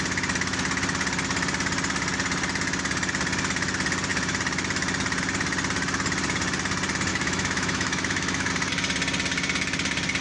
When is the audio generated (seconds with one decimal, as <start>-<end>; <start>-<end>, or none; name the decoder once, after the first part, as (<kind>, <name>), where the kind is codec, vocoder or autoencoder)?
7.1-8.5 (autoencoder, DAC-VAE)